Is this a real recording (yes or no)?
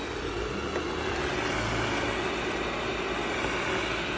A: yes